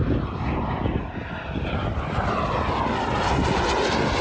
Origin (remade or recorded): recorded